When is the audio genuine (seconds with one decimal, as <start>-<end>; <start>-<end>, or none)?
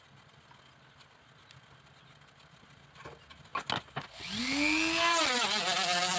0.0-6.2